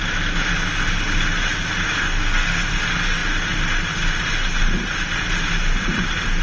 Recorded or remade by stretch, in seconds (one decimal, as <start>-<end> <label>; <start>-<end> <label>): 0.0-2.0 recorded; 2.0-2.6 remade; 2.6-6.4 recorded